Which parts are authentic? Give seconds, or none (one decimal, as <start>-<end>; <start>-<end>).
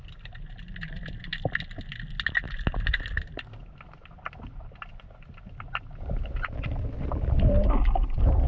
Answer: 0.0-8.5